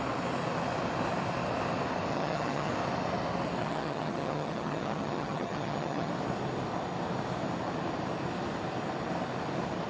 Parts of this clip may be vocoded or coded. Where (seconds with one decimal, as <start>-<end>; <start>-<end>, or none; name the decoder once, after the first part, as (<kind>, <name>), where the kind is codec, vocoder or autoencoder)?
2.1-2.7 (vocoder, HiFi-GAN); 3.6-6.1